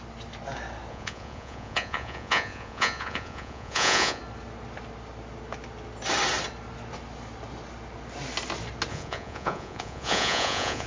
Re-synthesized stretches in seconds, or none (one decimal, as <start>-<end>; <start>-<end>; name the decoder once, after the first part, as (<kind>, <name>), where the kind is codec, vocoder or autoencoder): 0.9-4.2 (vocoder, Vocos); 8.9-10.9